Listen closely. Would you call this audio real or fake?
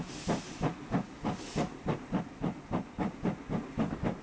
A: real